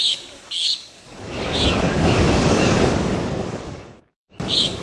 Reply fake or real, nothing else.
fake